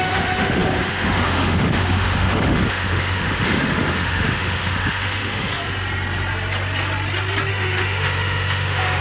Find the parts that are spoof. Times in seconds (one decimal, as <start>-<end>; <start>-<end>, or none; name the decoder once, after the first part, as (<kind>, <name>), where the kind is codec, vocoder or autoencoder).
0.0-5.5 (autoencoder, DAC-VAE); 7.5-9.0